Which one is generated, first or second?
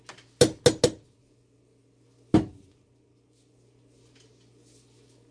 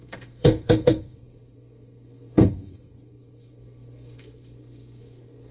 second